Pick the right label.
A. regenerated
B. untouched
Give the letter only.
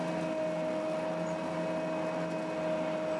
B